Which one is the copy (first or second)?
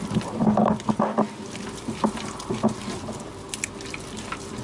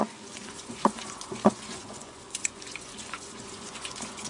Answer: second